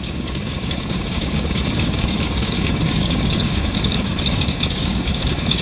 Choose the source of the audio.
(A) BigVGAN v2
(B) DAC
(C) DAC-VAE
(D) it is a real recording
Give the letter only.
B